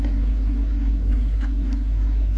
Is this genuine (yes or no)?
no